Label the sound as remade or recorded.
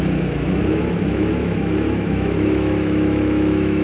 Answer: remade